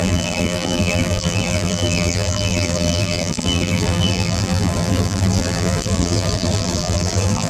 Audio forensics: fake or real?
fake